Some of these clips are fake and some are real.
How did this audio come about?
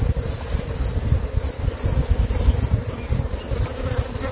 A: real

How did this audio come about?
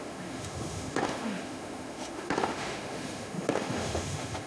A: fake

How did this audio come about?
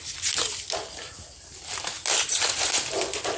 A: real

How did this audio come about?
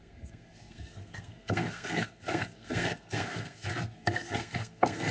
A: fake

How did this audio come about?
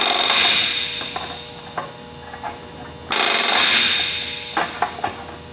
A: real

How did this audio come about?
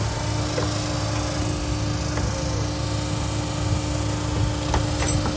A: real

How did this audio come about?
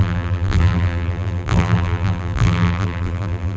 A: fake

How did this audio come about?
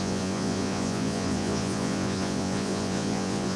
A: fake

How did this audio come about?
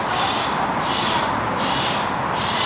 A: fake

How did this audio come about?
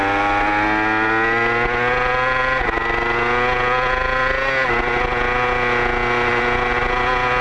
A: real